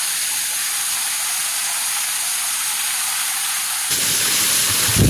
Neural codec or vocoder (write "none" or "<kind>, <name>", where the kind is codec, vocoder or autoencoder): none